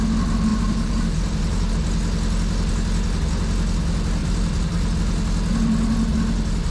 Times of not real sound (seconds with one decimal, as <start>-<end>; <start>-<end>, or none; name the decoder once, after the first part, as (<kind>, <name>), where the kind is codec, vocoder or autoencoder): 0.5-1.7 (vocoder, BigVGAN v2); 4.2-5.0